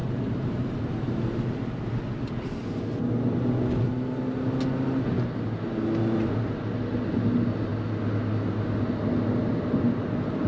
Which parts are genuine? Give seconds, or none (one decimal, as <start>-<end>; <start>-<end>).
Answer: 1.8-10.5